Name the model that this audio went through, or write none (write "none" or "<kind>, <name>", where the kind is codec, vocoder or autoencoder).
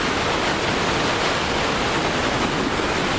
none